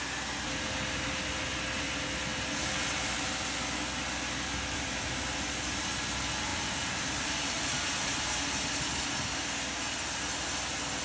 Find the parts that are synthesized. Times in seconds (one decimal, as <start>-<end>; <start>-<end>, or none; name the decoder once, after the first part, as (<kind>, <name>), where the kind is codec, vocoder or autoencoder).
2.3-3.3 (vocoder, BigVGAN v2); 6.5-9.0